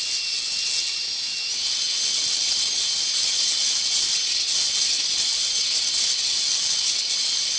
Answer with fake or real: real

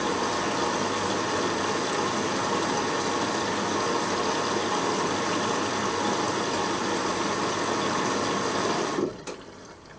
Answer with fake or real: real